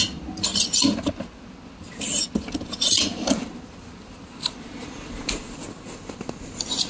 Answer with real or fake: real